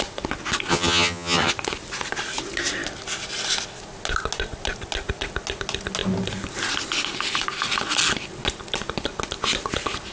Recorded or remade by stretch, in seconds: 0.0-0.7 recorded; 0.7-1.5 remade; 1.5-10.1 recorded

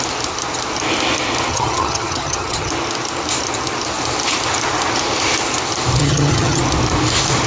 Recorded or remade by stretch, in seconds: 0.0-1.5 recorded; 1.5-2.7 remade; 2.7-6.0 recorded; 6.0-6.6 remade; 6.6-7.5 recorded

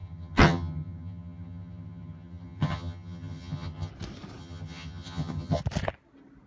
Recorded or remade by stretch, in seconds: 0.0-3.9 remade; 3.9-4.4 recorded; 4.4-5.6 remade; 5.6-6.5 recorded

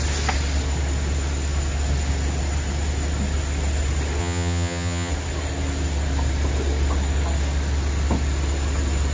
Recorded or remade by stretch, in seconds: 0.0-4.2 recorded; 4.2-5.1 remade; 5.1-9.1 recorded

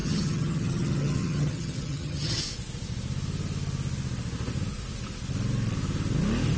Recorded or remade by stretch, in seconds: 0.0-2.4 remade; 2.4-6.6 recorded

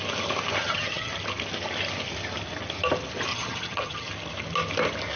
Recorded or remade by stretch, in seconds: 0.0-0.6 recorded; 0.6-1.1 remade; 1.1-3.3 recorded; 3.3-4.1 remade; 4.1-5.2 recorded

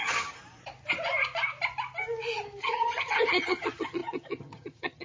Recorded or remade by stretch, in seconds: 0.0-0.4 remade; 0.4-2.6 recorded; 2.6-5.0 remade